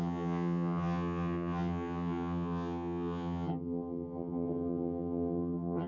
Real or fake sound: fake